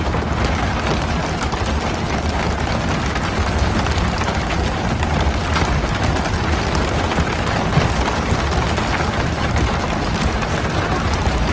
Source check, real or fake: real